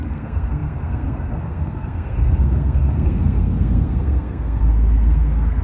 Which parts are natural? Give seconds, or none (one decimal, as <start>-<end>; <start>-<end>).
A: none